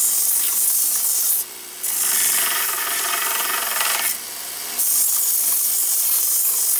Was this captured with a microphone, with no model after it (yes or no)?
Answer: yes